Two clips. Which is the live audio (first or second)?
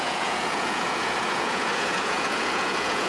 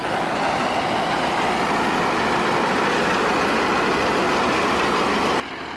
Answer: second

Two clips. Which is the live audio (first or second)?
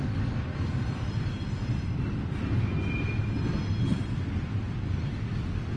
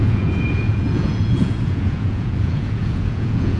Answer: first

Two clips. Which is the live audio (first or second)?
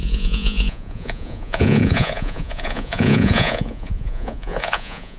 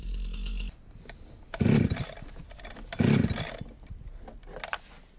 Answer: second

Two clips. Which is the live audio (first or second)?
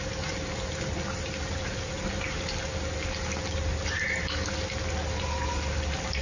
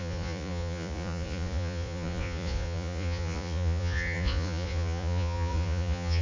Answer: first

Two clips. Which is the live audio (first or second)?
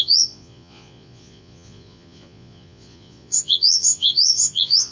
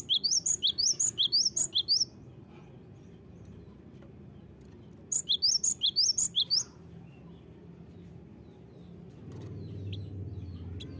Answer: second